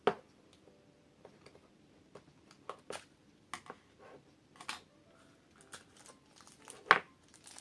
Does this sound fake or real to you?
real